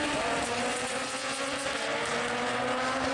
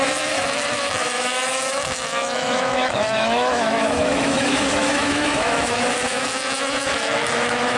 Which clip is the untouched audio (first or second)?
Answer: first